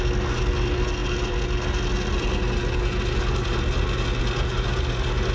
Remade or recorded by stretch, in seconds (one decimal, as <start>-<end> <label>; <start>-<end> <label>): 0.0-5.3 recorded